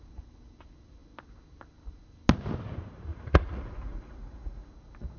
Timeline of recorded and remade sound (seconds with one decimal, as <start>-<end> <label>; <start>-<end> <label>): 0.0-3.1 recorded; 3.1-4.7 remade; 4.7-5.2 recorded